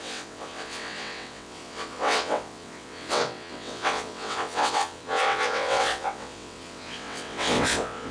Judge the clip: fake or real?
fake